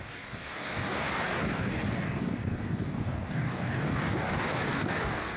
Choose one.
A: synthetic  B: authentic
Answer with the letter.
A